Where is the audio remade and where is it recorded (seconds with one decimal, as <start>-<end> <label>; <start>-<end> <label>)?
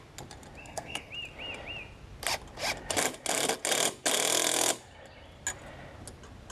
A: 0.0-0.6 recorded; 0.6-1.1 remade; 1.1-6.5 recorded